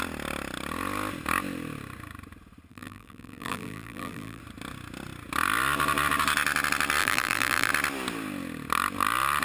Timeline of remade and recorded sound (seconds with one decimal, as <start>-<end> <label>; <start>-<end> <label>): 0.0-2.7 recorded; 2.7-4.4 remade; 4.4-7.0 recorded; 7.0-7.7 remade; 7.7-9.4 recorded